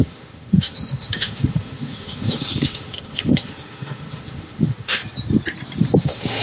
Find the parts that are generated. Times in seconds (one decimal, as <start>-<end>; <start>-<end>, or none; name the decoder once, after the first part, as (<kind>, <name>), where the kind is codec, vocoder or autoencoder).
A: 0.0-5.0 (autoencoder, DAC-VAE); 6.0-6.4